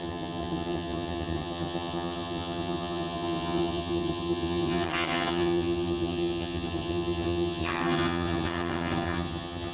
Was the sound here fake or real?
fake